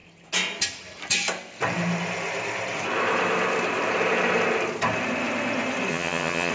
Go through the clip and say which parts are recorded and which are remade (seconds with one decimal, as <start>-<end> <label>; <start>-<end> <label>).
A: 0.0-5.9 recorded; 5.9-6.5 remade